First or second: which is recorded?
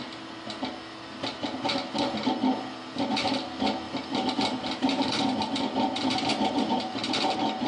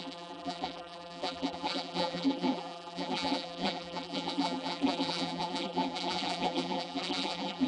first